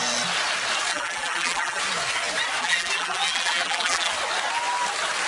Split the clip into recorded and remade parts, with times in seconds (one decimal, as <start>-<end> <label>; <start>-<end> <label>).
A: 0.0-0.9 recorded; 0.9-1.8 remade; 1.8-2.6 recorded; 2.6-4.1 remade; 4.1-5.3 recorded